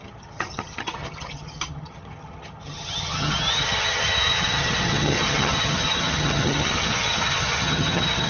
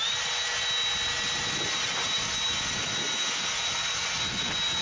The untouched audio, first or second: second